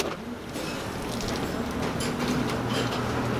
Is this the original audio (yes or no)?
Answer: yes